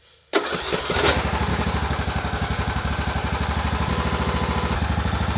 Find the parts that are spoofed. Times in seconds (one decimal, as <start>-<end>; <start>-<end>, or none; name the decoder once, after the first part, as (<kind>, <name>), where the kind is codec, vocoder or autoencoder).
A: 1.5-2.9 (codec, DAC)